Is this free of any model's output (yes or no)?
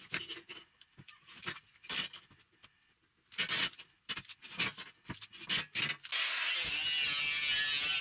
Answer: yes